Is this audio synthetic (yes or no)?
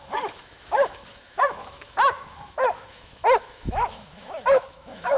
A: yes